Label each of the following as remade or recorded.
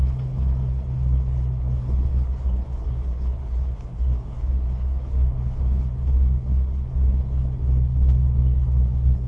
remade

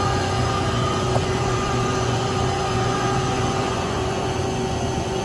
remade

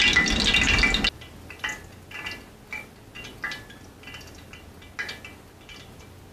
recorded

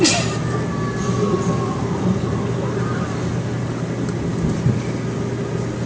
recorded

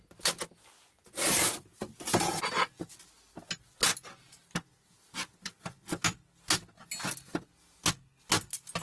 recorded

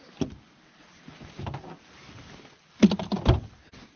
recorded